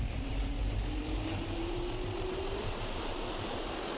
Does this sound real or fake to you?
fake